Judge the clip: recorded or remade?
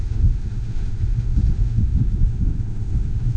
remade